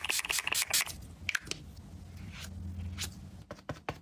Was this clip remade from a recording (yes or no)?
no